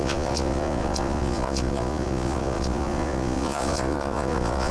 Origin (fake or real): fake